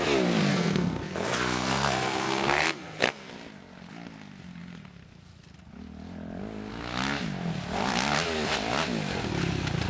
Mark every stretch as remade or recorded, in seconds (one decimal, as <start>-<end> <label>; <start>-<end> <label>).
0.0-0.5 recorded; 0.5-3.3 remade; 3.3-9.9 recorded